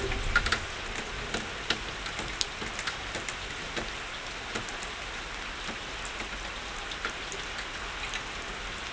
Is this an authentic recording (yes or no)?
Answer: yes